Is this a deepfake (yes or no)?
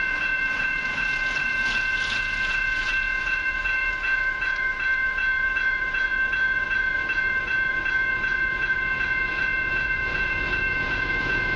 yes